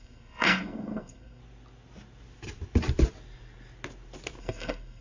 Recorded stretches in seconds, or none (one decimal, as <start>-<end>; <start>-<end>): 1.4-4.4

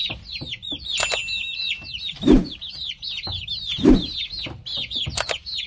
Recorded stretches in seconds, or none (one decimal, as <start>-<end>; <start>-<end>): 0.0-5.7

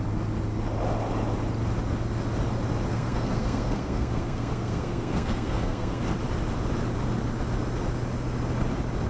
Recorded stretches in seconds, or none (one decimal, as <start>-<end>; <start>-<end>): 0.0-2.9; 6.0-9.1

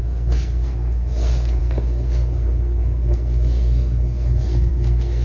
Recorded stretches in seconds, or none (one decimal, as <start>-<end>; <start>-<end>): none

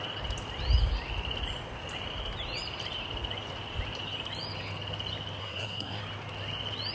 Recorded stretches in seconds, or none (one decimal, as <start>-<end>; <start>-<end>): 0.0-5.4; 6.0-6.9

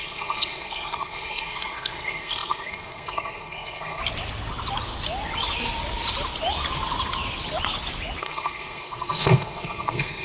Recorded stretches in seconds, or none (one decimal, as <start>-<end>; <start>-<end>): 4.0-8.2

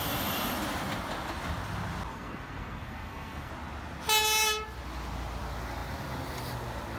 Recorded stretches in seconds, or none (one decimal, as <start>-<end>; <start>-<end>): 0.0-2.1; 3.5-7.0

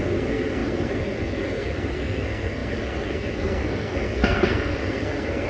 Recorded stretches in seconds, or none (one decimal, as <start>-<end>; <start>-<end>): none